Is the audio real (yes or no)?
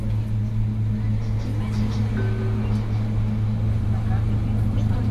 yes